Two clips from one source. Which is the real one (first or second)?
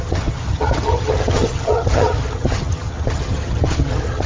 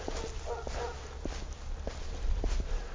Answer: second